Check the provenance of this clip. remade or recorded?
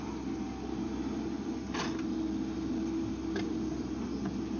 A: recorded